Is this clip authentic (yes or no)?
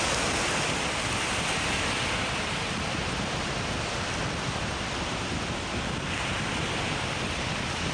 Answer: yes